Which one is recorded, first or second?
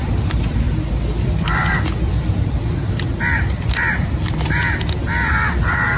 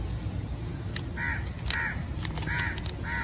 second